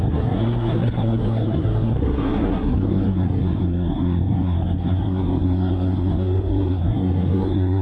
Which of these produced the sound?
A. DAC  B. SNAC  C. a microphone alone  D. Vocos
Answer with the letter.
B